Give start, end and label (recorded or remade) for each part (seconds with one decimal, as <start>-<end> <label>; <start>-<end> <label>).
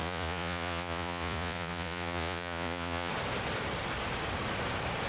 0.0-3.1 remade; 3.1-5.1 recorded